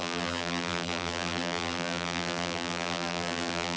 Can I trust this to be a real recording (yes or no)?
no